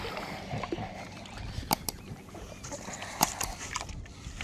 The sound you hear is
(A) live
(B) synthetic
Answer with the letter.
A